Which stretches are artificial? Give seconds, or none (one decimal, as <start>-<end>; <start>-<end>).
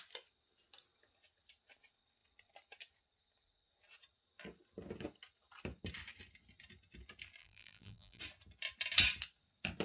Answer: 7.4-8.2